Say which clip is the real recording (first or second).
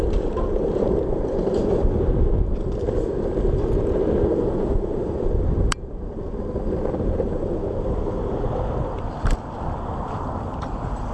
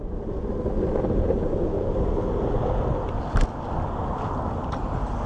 second